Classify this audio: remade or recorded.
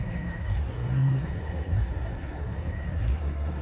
remade